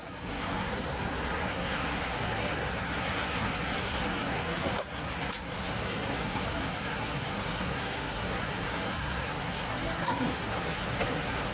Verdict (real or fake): fake